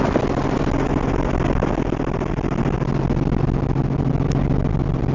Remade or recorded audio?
recorded